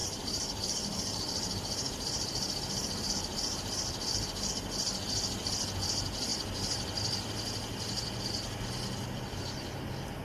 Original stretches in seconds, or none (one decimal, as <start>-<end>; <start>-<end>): 4.5-10.2